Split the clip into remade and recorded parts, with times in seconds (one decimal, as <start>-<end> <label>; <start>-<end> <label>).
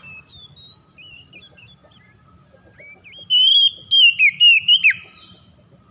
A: 0.0-5.9 recorded